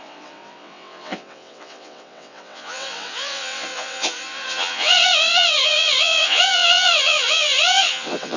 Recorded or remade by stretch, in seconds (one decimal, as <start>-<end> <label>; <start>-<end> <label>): 0.0-8.4 remade